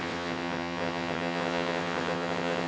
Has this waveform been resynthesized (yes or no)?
yes